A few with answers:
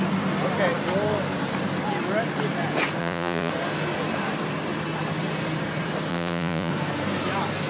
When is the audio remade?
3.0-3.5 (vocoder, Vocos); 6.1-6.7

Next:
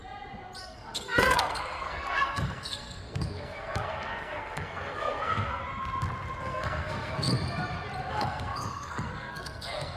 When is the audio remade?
0.6-5.6 (codec, SNAC); 6.4-7.3; 8.1-10.0

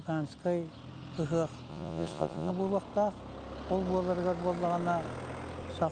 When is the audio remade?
1.7-2.5 (vocoder, Vocos)

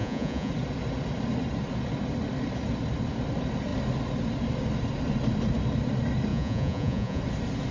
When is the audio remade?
0.0-0.5 (vocoder, Vocos); 6.3-7.2

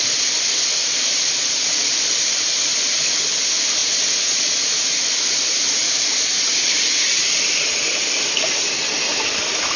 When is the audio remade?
none